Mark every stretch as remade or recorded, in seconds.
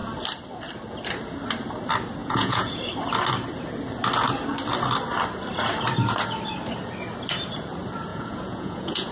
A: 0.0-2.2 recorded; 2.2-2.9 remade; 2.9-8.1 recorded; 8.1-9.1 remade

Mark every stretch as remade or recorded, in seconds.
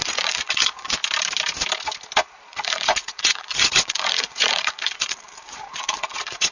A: 0.0-1.0 remade; 1.0-2.3 recorded; 2.3-6.5 remade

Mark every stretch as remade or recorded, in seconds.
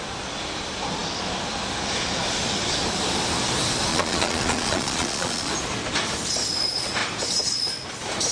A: 0.0-3.9 recorded; 3.9-5.5 remade; 5.5-8.3 recorded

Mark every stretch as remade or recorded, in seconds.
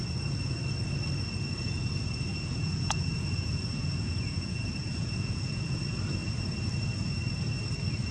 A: 0.0-2.3 recorded; 2.3-5.8 remade; 5.8-8.1 recorded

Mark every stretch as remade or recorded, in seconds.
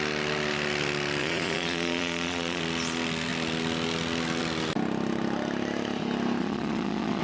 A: 0.0-1.2 recorded; 1.2-2.6 remade; 2.6-6.4 recorded; 6.4-7.2 remade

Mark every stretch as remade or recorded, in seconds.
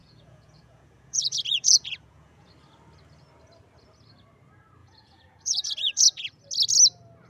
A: 0.0-2.5 remade; 2.5-4.8 recorded; 4.8-6.4 remade; 6.4-7.3 recorded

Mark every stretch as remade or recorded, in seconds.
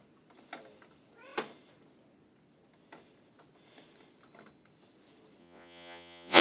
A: 0.0-5.4 recorded; 5.4-6.4 remade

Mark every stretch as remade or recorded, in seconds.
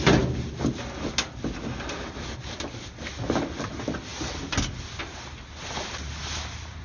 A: 0.0-6.8 recorded